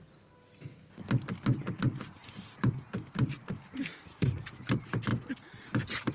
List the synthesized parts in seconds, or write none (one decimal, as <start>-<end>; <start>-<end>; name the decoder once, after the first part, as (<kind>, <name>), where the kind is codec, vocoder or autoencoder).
none